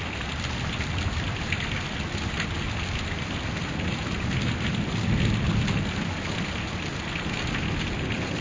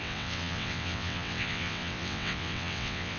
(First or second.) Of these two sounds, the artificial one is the second